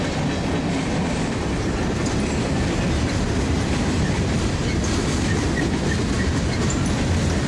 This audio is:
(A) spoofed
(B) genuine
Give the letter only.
B